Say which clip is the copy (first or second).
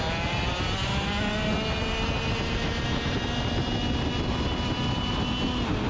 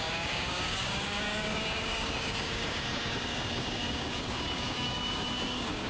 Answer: second